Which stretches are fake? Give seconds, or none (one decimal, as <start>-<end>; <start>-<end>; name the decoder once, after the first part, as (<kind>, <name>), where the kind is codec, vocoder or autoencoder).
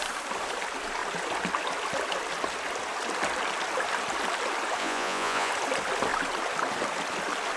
4.8-5.5 (vocoder, Vocos)